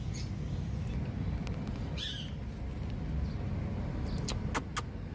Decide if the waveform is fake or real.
real